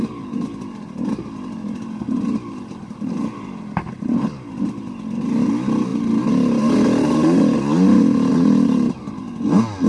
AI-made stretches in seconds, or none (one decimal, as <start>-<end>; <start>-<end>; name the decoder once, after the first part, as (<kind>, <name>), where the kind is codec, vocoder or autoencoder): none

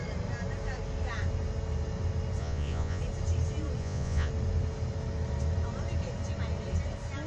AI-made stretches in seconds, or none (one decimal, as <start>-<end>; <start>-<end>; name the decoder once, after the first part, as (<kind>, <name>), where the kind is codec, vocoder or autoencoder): 2.4-3.0 (vocoder, Vocos); 3.8-4.3

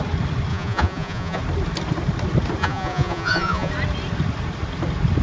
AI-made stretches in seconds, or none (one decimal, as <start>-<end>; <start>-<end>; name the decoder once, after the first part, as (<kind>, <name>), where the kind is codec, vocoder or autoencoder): 0.5-1.4 (vocoder, Vocos); 2.6-3.7

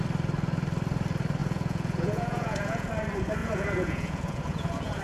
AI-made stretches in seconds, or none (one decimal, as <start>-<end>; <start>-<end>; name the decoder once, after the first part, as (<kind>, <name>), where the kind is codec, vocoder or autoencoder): 1.4-2.9 (vocoder, Vocos); 3.4-5.0

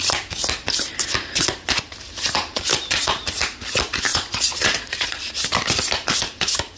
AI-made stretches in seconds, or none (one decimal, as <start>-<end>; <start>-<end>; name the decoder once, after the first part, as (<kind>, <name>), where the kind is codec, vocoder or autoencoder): 4.1-5.3 (vocoder, Vocos)